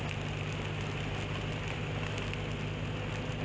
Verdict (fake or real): real